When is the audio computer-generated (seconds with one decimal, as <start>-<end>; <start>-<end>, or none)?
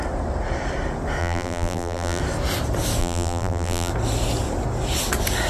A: 1.2-2.2; 3.0-3.9